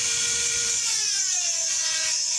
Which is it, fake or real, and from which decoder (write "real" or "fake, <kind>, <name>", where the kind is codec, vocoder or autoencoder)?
fake, vocoder, Vocos